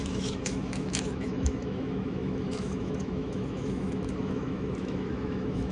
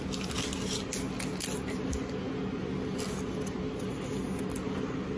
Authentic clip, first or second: second